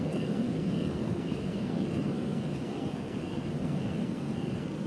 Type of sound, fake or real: fake